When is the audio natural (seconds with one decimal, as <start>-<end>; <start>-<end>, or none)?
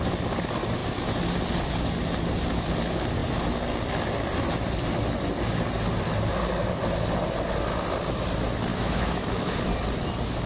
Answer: 0.0-8.7; 9.6-10.5